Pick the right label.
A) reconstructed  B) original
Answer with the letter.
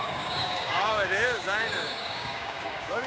A